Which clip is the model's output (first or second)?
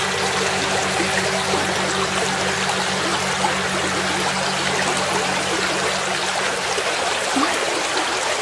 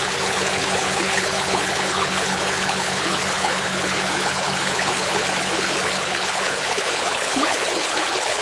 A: second